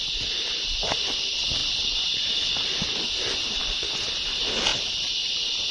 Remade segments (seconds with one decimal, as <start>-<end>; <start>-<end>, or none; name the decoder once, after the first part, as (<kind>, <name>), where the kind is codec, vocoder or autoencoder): none